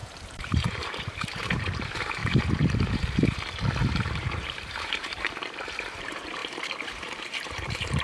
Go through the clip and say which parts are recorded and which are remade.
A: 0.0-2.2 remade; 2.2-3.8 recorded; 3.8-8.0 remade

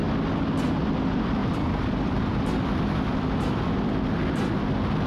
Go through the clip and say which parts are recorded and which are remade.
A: 0.0-1.4 recorded; 1.4-4.5 remade; 4.5-5.1 recorded